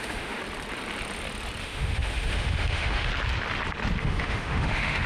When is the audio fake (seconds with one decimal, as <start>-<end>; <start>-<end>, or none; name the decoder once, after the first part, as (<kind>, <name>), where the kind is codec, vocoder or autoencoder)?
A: 0.0-0.4 (autoencoder, DAC-VAE); 1.6-3.1; 4.0-5.1